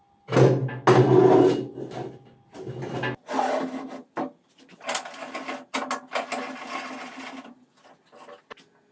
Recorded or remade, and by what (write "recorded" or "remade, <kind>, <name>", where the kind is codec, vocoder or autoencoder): recorded